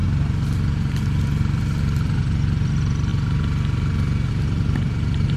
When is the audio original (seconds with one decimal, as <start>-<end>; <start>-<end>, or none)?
0.0-2.0; 3.1-4.3